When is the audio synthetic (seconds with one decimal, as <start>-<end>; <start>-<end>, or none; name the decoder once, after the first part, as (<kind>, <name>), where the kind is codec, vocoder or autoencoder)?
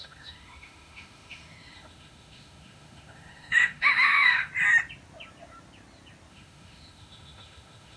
0.0-4.5 (autoencoder, DAC-VAE); 6.3-8.0